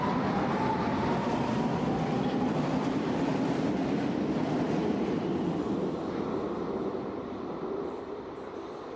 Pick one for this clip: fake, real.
fake